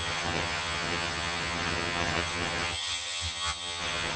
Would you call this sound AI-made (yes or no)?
yes